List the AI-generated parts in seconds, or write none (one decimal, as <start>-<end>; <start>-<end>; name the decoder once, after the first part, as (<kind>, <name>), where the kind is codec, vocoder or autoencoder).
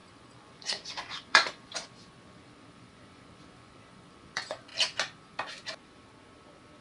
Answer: 0.0-4.7 (vocoder, Vocos)